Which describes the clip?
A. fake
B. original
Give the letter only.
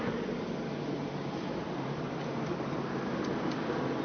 B